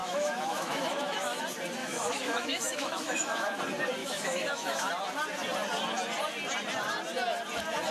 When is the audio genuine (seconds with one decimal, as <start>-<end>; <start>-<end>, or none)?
1.4-1.8; 3.6-4.0; 4.9-7.9